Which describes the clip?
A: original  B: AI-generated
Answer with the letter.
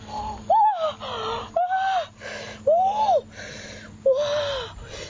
A